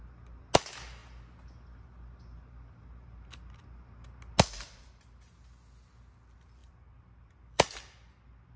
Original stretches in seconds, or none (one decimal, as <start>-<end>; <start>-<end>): 0.0-6.6; 8.1-8.6